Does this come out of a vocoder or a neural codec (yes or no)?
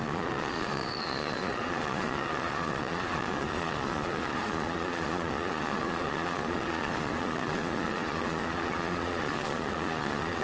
yes